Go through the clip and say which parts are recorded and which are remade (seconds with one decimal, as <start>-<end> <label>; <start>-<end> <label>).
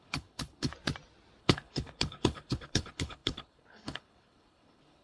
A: 0.0-0.7 remade; 0.7-1.4 recorded; 1.4-5.0 remade